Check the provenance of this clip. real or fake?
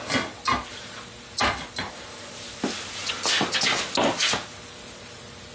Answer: real